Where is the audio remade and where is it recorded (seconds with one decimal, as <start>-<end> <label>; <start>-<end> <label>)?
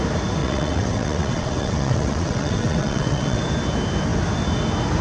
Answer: 0.0-0.4 recorded; 0.4-3.4 remade; 3.4-5.0 recorded